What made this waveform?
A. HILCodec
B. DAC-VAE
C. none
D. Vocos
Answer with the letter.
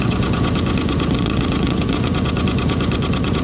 D